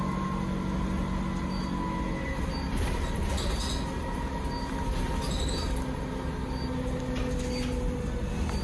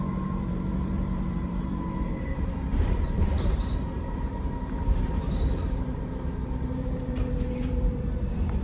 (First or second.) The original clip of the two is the first